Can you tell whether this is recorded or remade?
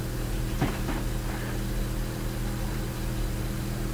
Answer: recorded